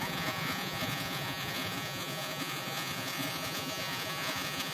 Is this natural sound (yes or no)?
no